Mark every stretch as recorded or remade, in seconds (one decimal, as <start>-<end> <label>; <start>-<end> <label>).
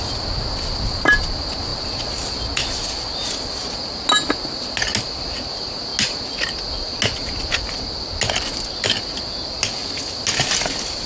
0.0-11.1 recorded